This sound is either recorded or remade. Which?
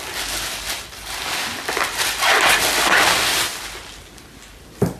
recorded